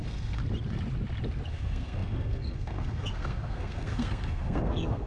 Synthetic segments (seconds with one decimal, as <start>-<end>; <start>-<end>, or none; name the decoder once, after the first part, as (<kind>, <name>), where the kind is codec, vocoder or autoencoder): 0.0-0.4 (codec, SNAC); 1.5-5.1

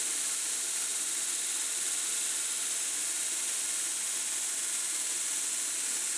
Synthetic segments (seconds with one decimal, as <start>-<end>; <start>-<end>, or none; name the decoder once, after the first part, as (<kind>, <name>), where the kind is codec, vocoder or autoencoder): none

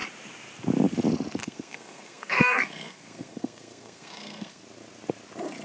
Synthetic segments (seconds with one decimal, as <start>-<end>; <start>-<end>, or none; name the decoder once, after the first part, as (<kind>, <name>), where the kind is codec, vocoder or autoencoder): 1.4-4.6 (codec, SNAC)

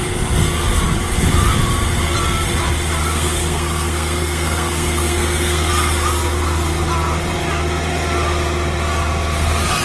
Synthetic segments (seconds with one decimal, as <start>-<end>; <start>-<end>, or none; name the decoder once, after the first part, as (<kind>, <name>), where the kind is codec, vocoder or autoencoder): 3.0-5.7 (codec, SNAC)

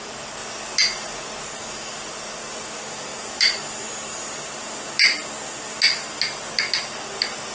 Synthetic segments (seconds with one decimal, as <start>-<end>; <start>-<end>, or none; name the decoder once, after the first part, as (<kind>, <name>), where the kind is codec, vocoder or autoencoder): none

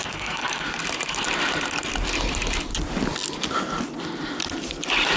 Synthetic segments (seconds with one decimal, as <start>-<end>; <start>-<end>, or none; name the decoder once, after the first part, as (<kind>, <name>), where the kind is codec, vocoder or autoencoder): 0.0-0.8 (codec, SNAC)

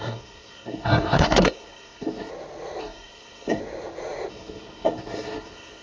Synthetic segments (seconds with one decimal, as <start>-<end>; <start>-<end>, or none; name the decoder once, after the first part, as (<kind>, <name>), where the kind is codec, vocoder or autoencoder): 0.0-2.3 (codec, SNAC); 2.8-3.6; 4.3-5.8